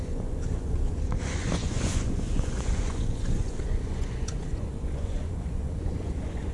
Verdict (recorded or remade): remade